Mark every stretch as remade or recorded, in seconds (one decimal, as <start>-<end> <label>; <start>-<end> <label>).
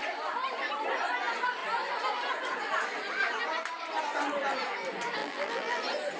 0.0-5.2 recorded; 5.2-5.8 remade; 5.8-6.2 recorded